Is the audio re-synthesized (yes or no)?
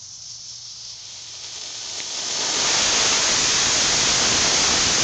no